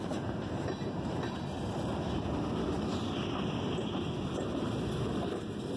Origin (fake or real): real